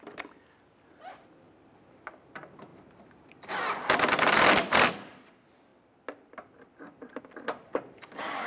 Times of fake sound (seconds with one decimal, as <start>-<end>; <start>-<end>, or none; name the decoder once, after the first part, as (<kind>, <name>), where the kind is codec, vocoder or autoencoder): none

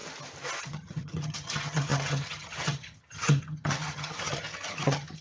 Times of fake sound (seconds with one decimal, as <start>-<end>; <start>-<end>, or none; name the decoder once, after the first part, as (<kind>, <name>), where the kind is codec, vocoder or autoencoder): 0.6-5.2 (vocoder, HiFi-GAN)

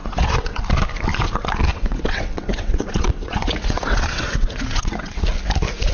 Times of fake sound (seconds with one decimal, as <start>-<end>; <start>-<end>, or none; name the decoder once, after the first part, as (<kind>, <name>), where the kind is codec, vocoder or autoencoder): 0.0-0.6 (vocoder, WaveNeXt); 1.7-5.2

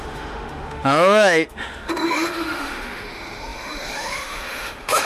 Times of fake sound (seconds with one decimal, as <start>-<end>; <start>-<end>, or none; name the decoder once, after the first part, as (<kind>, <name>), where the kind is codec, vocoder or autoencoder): 0.0-5.0 (autoencoder, DAC-VAE)

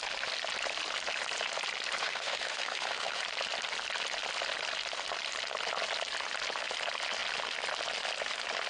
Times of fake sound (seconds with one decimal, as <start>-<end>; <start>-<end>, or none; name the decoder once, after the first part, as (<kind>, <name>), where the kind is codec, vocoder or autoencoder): 2.0-3.2 (autoencoder, DAC-VAE)